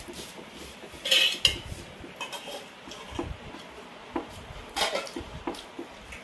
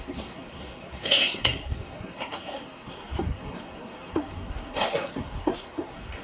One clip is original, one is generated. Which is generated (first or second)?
second